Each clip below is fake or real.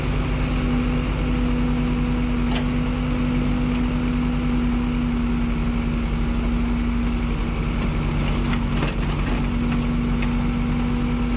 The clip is real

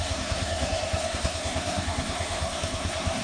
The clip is fake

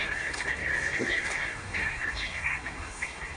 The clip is fake